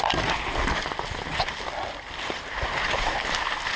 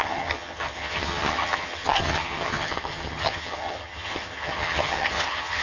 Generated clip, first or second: second